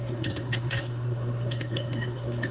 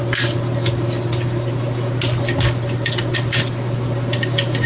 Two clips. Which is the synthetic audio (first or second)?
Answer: first